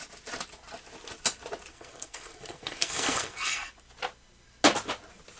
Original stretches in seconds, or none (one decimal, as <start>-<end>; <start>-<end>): 0.0-1.7; 3.7-5.4